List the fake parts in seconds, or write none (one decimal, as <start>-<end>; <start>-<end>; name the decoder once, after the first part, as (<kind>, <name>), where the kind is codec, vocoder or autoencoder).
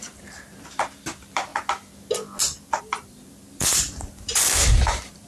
0.0-1.5 (vocoder, BigVGAN v2); 2.8-5.3